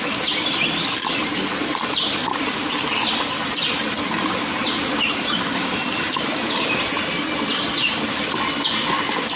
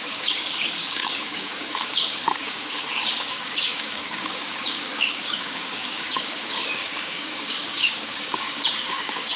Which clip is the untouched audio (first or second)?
first